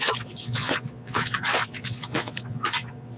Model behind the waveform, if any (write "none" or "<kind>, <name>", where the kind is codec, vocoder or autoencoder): vocoder, Vocos